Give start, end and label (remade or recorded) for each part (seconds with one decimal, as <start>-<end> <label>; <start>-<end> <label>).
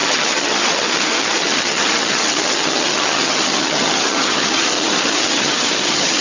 0.0-6.2 remade